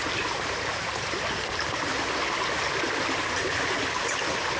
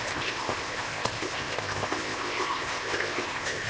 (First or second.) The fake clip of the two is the second